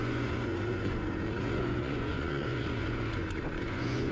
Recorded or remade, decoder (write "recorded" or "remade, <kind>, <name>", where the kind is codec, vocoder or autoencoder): remade, vocoder, Vocos